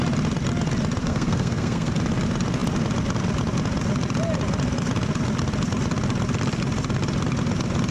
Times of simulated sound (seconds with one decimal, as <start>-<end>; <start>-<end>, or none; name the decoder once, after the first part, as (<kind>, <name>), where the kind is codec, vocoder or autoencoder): 1.0-1.9 (codec, SNAC)